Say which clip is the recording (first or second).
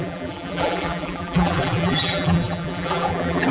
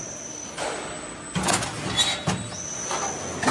second